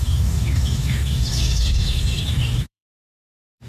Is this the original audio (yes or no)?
no